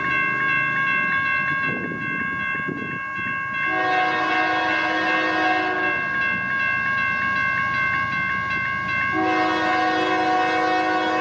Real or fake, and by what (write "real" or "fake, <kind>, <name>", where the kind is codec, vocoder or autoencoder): real